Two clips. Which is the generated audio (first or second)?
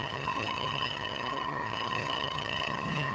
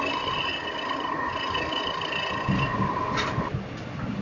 first